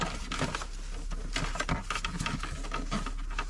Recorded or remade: recorded